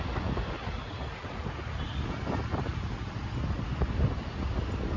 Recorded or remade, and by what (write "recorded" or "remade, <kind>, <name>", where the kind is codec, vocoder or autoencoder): recorded